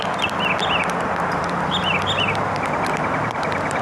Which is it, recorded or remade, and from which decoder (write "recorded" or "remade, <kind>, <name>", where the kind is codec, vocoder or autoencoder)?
recorded